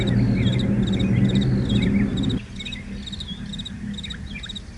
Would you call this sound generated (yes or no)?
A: no